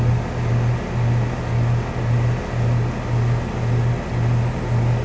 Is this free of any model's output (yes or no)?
yes